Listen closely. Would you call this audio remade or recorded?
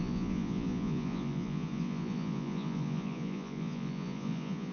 remade